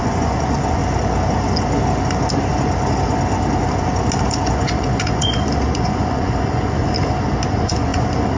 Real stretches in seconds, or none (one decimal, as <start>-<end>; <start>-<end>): 0.8-4.5; 6.8-7.5

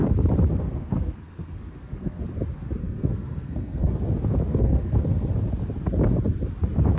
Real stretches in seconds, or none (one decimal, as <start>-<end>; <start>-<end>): 0.0-0.5; 2.2-2.8; 4.1-4.5; 5.3-7.0

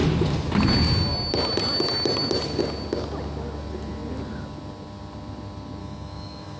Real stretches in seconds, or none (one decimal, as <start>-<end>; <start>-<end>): 0.0-5.8

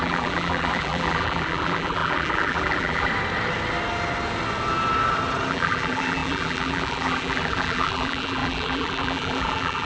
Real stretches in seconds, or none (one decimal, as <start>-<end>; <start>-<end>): 3.1-5.5

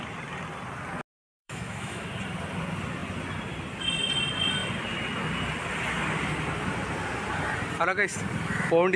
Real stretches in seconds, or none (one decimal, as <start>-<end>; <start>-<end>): 0.0-1.3; 2.1-9.0

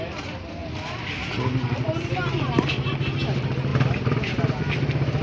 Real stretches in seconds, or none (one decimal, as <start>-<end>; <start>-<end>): 0.0-5.2

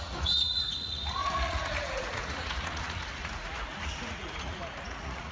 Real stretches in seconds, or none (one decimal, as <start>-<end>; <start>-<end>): none